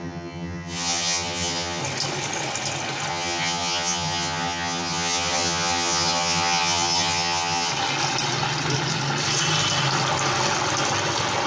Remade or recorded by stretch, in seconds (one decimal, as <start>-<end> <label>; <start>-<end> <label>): 0.0-1.8 remade; 1.8-3.1 recorded; 3.1-7.7 remade; 7.7-11.5 recorded